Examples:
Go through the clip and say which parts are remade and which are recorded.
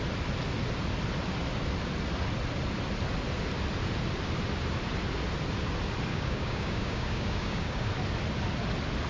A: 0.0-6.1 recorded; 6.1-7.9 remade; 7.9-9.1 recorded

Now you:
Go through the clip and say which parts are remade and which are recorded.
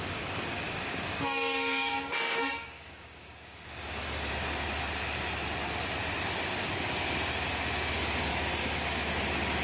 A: 0.0-4.3 remade; 4.3-8.3 recorded; 8.3-9.1 remade; 9.1-9.6 recorded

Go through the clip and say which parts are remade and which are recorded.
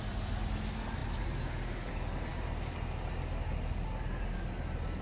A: 0.0-5.0 recorded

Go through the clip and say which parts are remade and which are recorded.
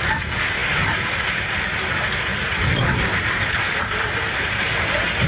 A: 0.0-5.3 recorded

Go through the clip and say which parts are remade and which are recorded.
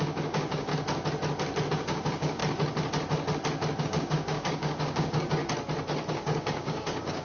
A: 0.0-0.7 remade; 0.7-1.7 recorded; 1.7-2.4 remade; 2.4-3.8 recorded; 3.8-5.4 remade; 5.4-6.1 recorded; 6.1-7.2 remade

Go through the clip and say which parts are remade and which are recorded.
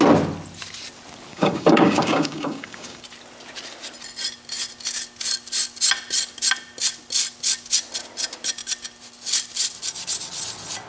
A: 0.0-1.3 recorded; 1.3-3.0 remade; 3.0-10.9 recorded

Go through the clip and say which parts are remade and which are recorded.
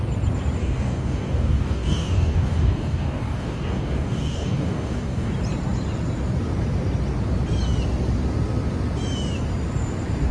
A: 0.0-0.6 recorded; 0.6-5.3 remade; 5.3-10.3 recorded